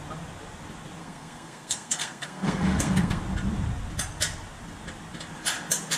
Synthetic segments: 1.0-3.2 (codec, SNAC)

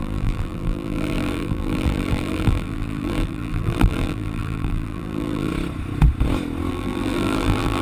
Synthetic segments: 0.0-5.5 (vocoder, BigVGAN v2); 6.7-7.8

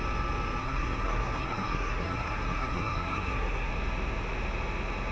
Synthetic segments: 0.6-3.7 (codec, SNAC)

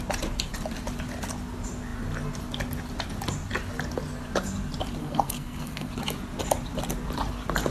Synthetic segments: 5.0-5.9 (codec, SNAC)

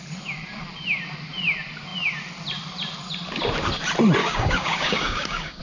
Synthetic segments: 4.2-5.6 (codec, DAC)

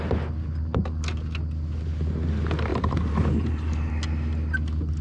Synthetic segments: 2.7-3.9 (vocoder, BigVGAN v2)

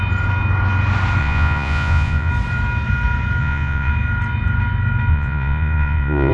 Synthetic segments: 1.2-2.3 (vocoder, Vocos); 3.4-3.9; 5.1-6.3

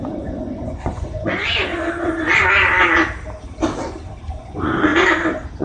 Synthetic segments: 0.0-1.7 (vocoder, Vocos); 4.4-4.9